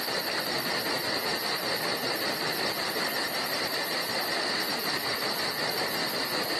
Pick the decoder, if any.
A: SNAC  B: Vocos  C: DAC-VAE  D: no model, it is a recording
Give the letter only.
D